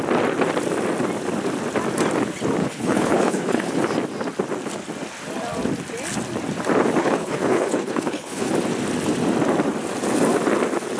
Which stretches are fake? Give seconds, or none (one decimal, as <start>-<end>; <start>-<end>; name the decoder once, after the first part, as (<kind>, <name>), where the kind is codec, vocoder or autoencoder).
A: 2.6-3.8 (codec, HILCodec); 7.0-8.5